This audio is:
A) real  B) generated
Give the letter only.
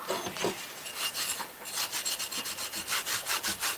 A